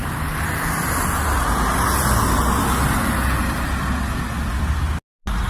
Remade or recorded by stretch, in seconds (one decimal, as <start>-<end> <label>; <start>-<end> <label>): 0.0-5.5 recorded